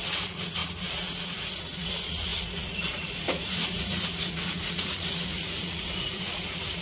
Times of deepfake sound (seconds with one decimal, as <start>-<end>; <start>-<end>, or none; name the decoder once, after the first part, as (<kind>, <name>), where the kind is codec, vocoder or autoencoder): 0.0-6.8 (vocoder, Vocos)